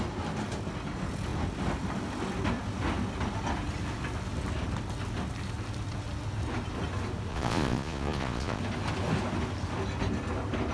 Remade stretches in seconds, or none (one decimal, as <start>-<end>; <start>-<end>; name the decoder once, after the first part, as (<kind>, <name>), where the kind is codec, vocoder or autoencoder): 7.3-8.6 (vocoder, Vocos)